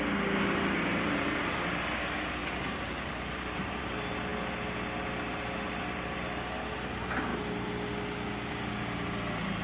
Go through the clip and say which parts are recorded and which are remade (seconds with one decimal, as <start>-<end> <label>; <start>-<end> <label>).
0.0-0.9 recorded; 0.9-1.4 remade; 1.4-2.4 recorded; 2.4-3.8 remade; 3.8-9.6 recorded